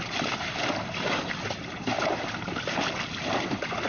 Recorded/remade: recorded